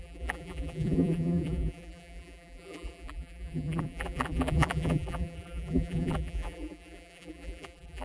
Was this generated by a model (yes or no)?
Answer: yes